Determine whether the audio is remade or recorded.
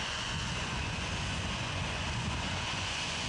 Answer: remade